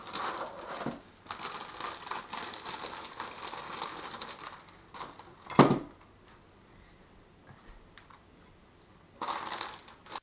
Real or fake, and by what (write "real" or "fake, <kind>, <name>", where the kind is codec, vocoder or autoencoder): real